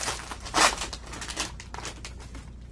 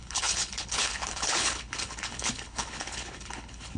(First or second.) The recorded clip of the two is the first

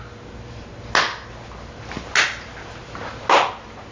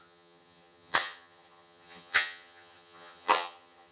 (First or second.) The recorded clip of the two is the first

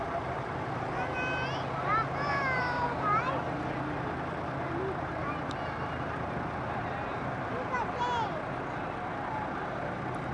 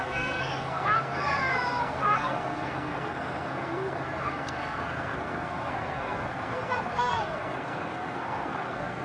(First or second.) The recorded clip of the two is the first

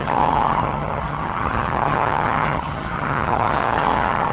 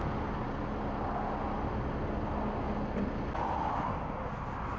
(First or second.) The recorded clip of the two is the second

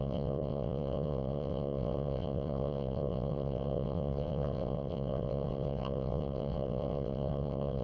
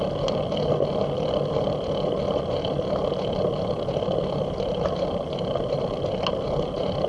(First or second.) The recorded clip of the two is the second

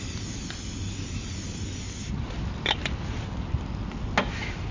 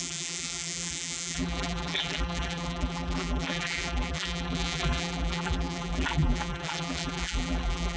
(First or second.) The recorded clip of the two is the first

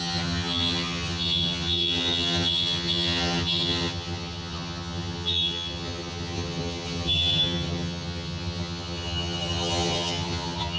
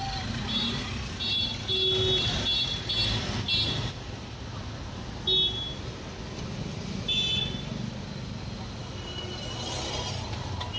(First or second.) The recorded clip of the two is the second